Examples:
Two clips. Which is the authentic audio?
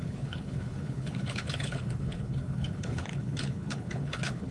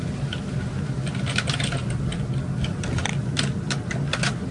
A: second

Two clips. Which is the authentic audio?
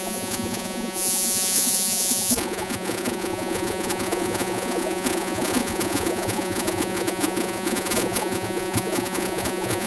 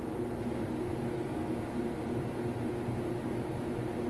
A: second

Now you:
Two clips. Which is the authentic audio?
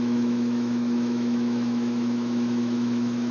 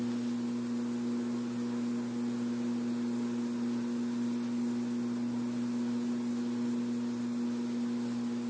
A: second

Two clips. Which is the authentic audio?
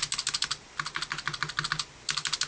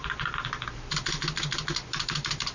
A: first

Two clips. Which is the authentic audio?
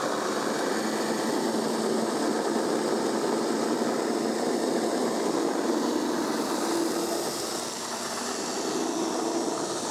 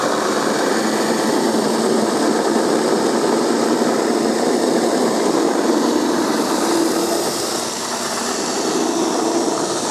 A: first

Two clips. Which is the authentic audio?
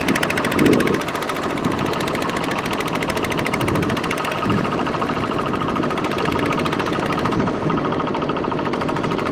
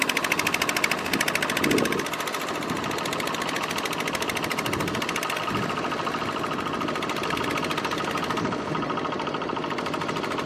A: second